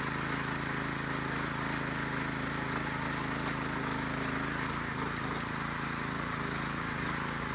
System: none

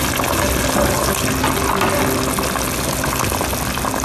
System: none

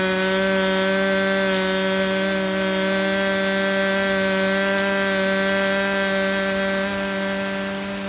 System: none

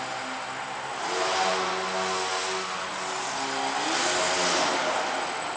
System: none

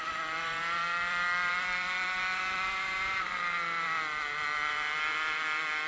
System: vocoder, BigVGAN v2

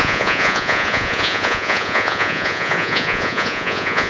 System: vocoder, Vocos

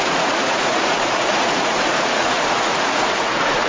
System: vocoder, Vocos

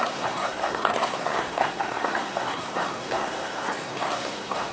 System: codec, SNAC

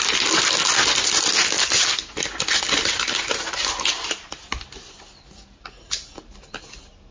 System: none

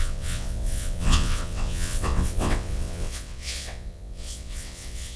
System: vocoder, WaveNeXt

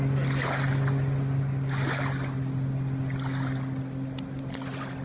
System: none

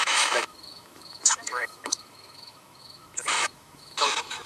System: autoencoder, DAC-VAE